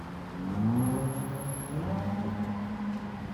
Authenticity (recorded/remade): recorded